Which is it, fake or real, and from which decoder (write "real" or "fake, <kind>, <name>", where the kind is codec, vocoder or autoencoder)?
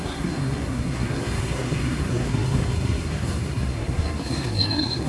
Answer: fake, codec, SNAC